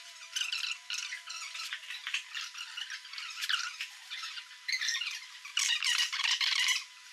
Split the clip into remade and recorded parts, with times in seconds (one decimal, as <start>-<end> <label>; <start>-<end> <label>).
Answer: 0.0-1.0 remade; 1.0-1.6 recorded; 1.6-7.1 remade

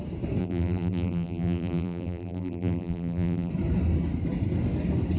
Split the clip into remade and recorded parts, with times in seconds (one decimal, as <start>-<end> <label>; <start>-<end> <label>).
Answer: 0.0-0.4 recorded; 0.4-3.5 remade; 3.5-5.2 recorded

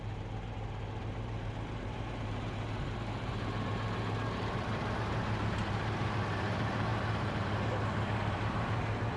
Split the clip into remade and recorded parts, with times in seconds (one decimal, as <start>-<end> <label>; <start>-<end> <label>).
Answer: 0.0-9.2 remade